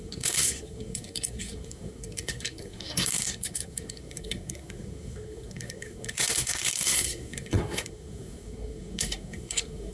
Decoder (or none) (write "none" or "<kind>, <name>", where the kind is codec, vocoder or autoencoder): codec, SNAC